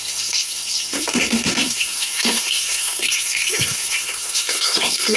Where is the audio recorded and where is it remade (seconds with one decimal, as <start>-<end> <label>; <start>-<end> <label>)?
0.0-5.2 remade